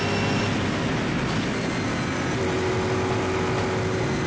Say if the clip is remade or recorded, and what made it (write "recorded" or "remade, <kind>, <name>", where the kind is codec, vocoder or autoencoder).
recorded